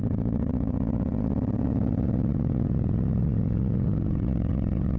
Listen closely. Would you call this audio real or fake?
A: fake